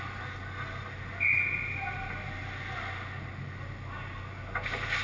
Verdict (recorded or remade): recorded